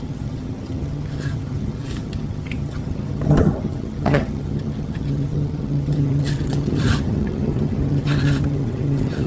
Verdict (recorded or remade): remade